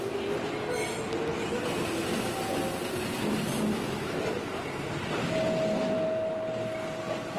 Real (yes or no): yes